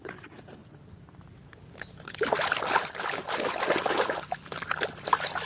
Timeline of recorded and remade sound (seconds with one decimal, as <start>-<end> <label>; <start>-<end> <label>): 0.0-5.5 recorded